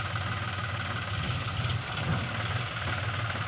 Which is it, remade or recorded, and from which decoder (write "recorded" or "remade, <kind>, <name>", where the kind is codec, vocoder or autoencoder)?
recorded